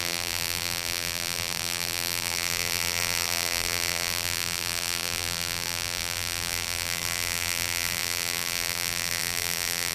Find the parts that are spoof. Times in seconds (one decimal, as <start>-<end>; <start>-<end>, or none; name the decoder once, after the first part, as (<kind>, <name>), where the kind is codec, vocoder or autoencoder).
0.0-9.9 (vocoder, BigVGAN v2)